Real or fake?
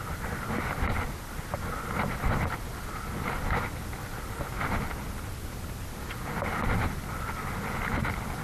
real